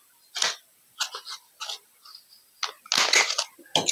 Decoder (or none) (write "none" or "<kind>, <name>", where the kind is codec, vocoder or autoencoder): none